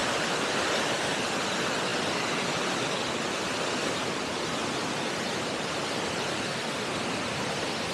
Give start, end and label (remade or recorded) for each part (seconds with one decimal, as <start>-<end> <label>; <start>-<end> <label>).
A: 0.0-1.3 remade; 1.3-7.9 recorded